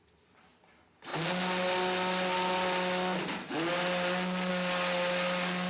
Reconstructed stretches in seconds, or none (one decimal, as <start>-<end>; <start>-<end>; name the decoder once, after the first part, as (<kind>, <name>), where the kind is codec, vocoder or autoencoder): none